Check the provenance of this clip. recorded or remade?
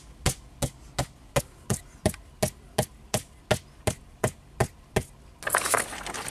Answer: recorded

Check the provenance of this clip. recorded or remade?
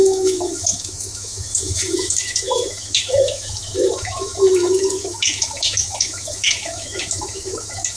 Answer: remade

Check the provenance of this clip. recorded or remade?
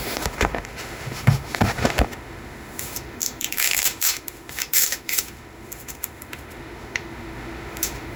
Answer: remade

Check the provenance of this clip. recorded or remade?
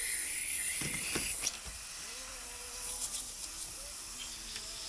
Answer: recorded